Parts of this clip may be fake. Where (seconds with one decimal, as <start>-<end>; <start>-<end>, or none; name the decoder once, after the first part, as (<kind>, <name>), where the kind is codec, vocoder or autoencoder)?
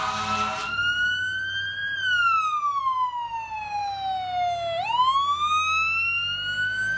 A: none